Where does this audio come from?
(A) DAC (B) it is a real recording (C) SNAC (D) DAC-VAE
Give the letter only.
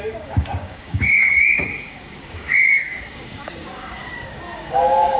A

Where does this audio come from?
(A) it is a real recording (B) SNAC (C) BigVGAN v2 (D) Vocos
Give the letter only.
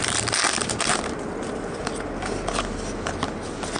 A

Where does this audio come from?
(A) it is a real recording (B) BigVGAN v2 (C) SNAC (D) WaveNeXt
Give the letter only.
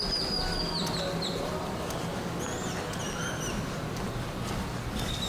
A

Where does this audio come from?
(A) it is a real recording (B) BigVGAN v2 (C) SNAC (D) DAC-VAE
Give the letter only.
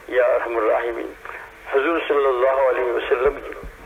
A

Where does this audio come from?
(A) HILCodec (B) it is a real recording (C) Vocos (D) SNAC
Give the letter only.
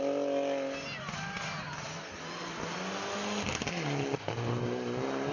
B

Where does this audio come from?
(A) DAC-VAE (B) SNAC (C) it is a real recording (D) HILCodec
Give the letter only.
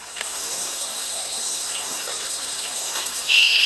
B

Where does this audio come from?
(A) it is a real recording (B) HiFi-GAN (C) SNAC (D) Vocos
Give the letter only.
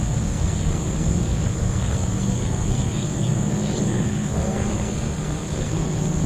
C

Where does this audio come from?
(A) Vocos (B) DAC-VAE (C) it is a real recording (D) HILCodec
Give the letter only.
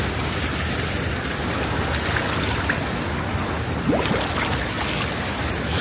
C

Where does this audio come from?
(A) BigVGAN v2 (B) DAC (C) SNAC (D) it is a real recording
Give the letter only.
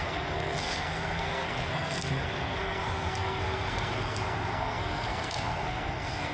C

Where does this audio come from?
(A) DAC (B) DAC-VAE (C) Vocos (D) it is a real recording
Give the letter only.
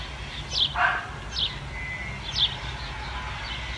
D